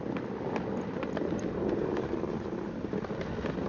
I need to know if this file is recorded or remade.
recorded